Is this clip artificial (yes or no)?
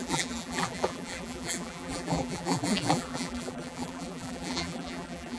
yes